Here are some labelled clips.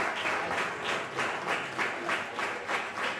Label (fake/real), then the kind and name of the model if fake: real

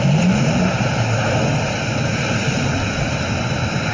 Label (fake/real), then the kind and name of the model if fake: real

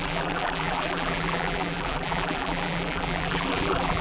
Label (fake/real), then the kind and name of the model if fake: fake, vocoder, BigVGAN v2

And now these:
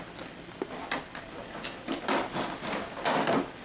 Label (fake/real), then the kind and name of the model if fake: real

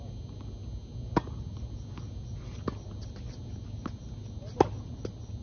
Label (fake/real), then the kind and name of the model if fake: real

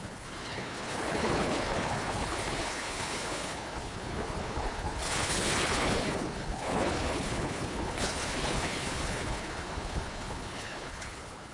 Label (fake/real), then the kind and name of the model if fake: fake, codec, HILCodec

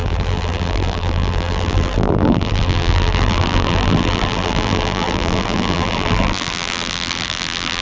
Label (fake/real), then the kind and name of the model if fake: fake, vocoder, BigVGAN v2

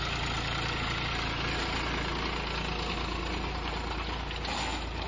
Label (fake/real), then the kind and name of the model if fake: real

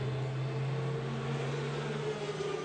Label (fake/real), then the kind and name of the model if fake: real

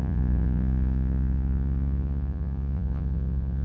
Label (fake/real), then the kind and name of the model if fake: fake, vocoder, Vocos